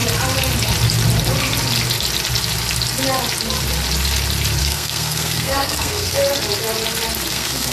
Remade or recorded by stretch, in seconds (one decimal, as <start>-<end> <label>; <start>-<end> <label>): 0.0-4.6 recorded; 4.6-6.2 remade; 6.2-7.3 recorded; 7.3-7.7 remade